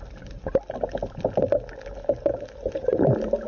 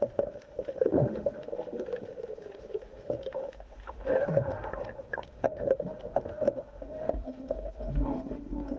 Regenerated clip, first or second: second